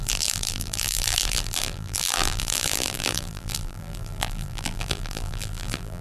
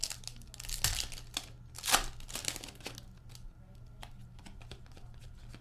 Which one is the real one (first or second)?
second